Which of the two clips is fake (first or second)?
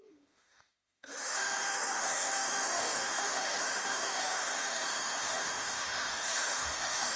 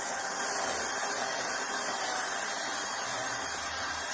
first